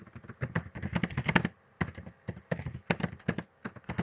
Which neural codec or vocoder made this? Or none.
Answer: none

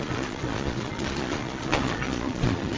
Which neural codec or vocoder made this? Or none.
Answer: vocoder, Vocos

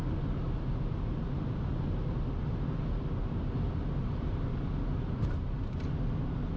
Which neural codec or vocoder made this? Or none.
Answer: none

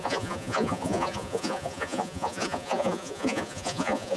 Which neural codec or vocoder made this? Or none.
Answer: vocoder, Vocos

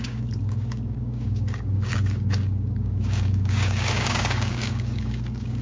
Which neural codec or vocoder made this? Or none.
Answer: codec, DAC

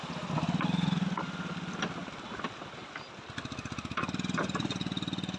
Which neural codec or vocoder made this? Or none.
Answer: none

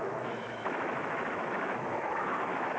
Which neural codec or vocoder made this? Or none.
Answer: autoencoder, DAC-VAE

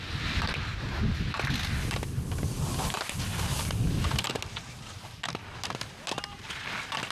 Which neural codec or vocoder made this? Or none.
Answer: none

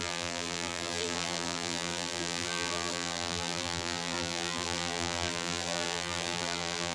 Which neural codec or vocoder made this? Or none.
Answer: vocoder, BigVGAN v2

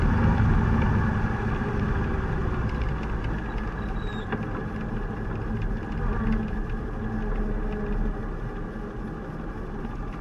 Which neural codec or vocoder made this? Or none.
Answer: none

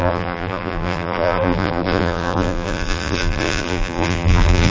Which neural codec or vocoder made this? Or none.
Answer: vocoder, BigVGAN v2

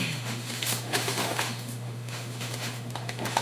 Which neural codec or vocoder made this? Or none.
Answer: autoencoder, DAC-VAE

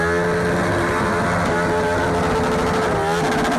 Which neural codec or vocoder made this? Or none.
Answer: none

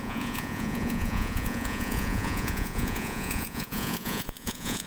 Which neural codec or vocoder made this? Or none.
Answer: vocoder, Vocos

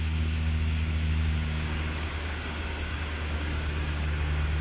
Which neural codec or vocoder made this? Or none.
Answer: codec, DAC